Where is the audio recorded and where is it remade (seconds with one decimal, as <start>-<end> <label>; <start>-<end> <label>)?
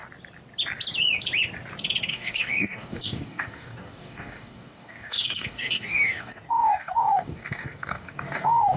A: 0.0-2.1 recorded; 2.1-8.8 remade